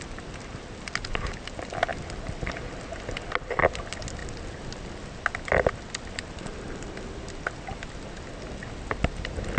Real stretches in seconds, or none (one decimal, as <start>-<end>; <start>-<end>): 0.0-9.6